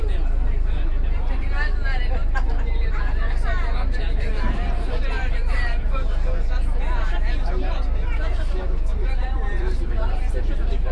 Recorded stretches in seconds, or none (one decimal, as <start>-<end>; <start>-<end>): none